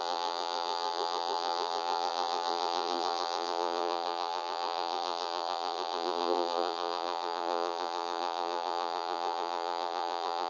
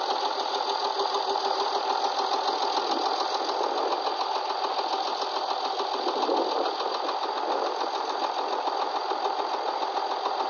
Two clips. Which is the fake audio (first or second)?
first